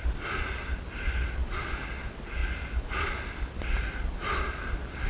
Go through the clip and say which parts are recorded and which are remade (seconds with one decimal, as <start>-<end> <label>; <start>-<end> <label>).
0.0-5.1 recorded